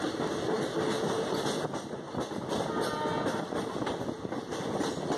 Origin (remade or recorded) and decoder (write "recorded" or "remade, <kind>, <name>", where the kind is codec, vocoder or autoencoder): recorded